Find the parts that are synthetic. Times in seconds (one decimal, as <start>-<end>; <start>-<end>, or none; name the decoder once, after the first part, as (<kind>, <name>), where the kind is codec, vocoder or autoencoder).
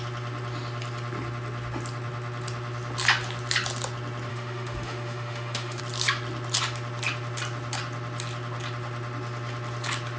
4.3-5.8 (autoencoder, DAC-VAE)